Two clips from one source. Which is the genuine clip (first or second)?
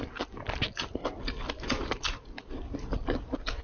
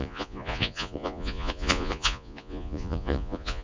first